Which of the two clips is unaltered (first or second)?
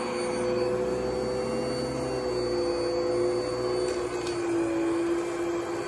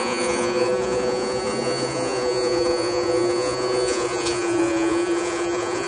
first